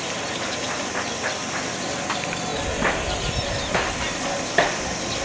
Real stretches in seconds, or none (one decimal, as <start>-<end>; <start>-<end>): 0.0-5.2